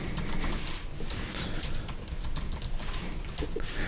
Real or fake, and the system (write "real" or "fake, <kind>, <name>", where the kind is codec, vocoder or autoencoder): real